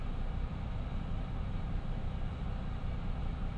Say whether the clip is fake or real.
real